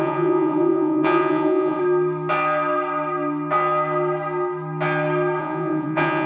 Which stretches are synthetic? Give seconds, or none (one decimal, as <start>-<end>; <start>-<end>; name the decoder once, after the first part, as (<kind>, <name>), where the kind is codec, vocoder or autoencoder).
0.0-1.8 (vocoder, Vocos); 5.4-6.3